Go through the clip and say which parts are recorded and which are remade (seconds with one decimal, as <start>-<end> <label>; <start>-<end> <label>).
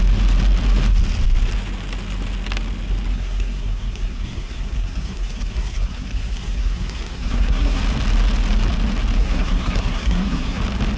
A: 0.0-3.1 recorded; 3.1-7.8 remade; 7.8-9.2 recorded; 9.2-10.6 remade; 10.6-11.0 recorded